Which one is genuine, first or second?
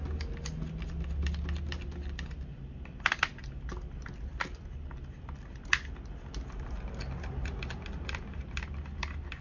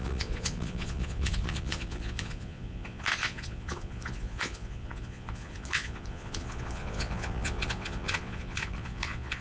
first